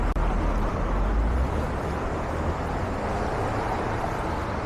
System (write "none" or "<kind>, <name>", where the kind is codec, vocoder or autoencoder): none